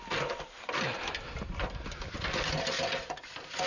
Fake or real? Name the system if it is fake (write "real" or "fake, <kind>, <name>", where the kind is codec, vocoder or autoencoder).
real